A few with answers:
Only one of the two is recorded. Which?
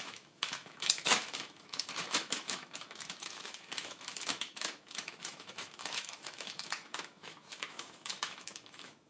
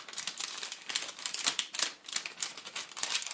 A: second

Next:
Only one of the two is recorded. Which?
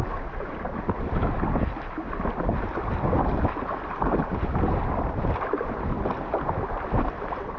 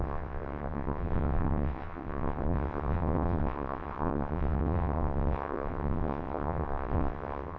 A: first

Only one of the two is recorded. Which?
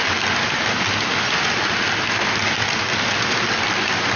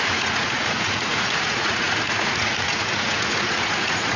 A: first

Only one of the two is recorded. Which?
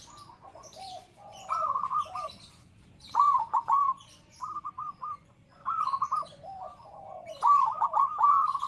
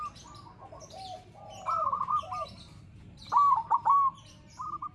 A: second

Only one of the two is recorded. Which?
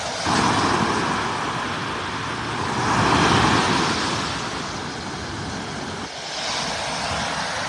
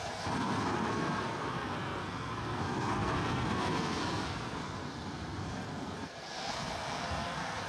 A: first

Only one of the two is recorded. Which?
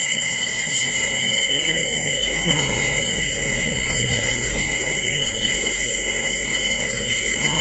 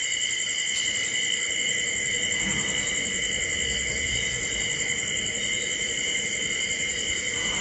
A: second